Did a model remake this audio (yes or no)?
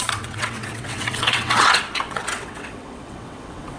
yes